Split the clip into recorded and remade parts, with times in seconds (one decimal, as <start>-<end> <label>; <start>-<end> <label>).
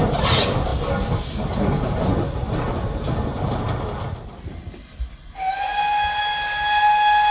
0.0-7.3 recorded